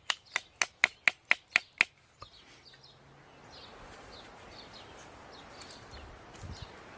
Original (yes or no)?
yes